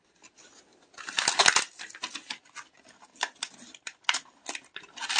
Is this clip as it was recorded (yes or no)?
yes